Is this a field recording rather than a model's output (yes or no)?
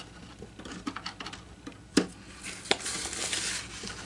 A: yes